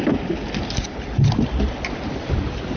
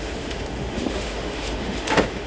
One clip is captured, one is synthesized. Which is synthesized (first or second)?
second